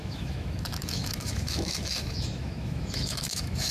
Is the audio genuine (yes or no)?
no